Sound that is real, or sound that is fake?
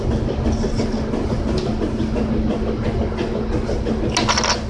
real